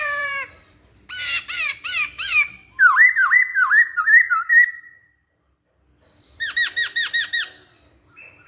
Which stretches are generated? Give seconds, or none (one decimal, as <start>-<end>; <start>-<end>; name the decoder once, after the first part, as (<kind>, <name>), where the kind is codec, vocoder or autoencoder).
0.0-3.5 (vocoder, BigVGAN v2); 4.0-8.5